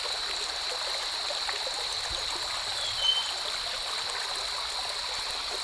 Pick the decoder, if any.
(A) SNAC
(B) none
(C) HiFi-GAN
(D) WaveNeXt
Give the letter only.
B